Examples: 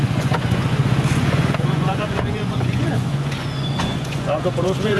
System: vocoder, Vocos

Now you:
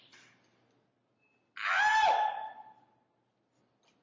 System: none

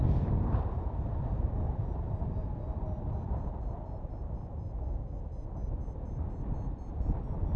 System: none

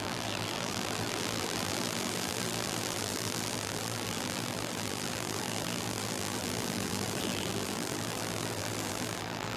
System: vocoder, BigVGAN v2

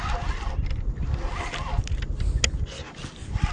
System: none